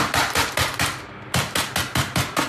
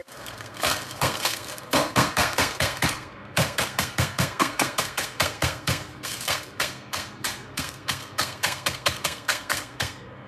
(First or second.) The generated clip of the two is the second